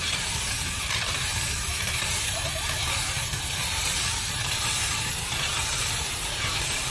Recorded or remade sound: remade